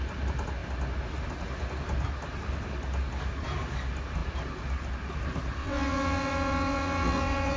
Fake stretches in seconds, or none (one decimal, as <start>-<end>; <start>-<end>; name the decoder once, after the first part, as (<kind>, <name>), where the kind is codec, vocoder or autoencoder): 5.6-7.6 (vocoder, WaveNeXt)